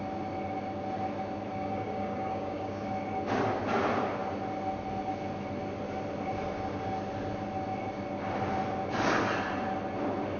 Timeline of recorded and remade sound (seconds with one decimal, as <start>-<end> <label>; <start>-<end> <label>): 0.0-1.5 recorded; 1.5-2.9 remade; 2.9-10.4 recorded